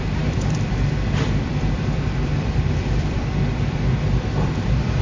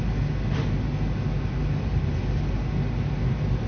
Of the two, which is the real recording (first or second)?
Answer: second